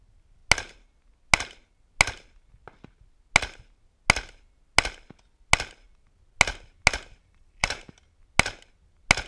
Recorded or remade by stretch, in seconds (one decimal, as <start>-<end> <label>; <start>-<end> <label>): 0.0-7.2 recorded; 7.2-8.0 remade; 8.0-9.3 recorded